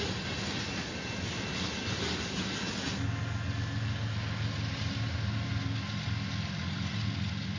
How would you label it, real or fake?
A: real